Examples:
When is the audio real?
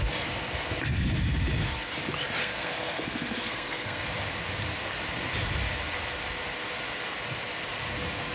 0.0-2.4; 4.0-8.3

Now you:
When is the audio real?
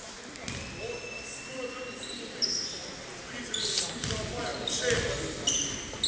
0.0-6.1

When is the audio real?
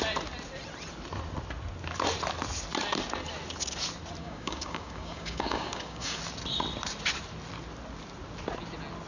0.0-4.2; 6.2-9.1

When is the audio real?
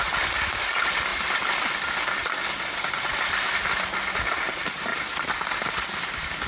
0.0-6.5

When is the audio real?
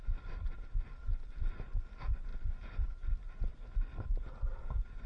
0.0-2.3; 2.9-5.1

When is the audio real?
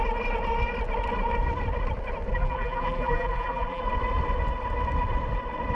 0.0-2.3; 3.8-5.7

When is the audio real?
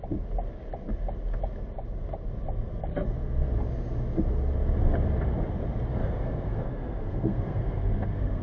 0.0-2.9; 3.5-6.0